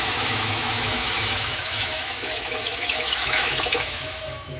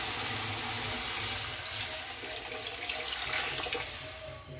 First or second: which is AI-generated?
first